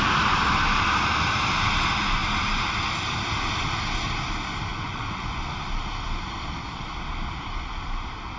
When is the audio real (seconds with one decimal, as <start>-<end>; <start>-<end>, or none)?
0.0-4.7; 5.4-8.4